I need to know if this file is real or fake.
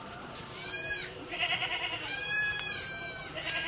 fake